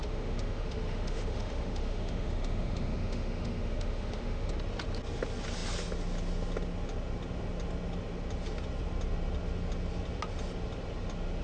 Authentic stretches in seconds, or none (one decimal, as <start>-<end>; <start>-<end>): 4.5-11.4